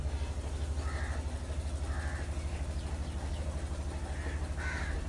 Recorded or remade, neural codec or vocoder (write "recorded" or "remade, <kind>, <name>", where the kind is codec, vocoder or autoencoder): recorded